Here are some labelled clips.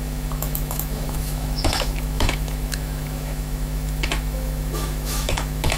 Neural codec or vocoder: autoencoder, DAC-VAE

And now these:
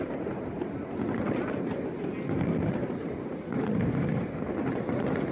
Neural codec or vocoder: none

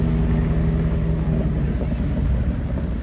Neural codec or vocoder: none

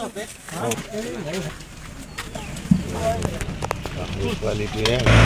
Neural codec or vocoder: none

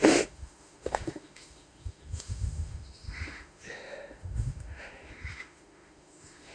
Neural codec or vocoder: autoencoder, DAC-VAE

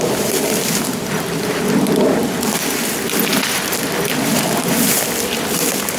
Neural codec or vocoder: none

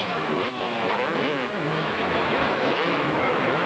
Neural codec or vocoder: autoencoder, DAC-VAE